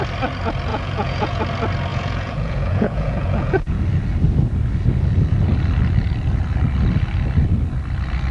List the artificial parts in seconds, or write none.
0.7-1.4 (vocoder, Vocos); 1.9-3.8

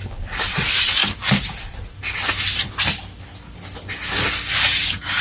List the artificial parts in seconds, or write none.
none

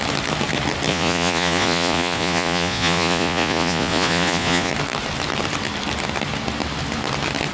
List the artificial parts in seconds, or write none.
0.9-4.7 (vocoder, Vocos)

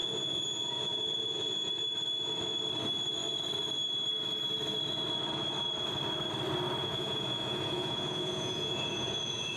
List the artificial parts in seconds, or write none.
0.0-1.7 (vocoder, Vocos); 6.8-9.6

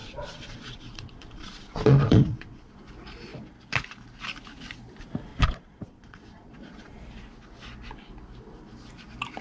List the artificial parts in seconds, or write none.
0.0-2.8 (vocoder, Vocos); 5.3-7.0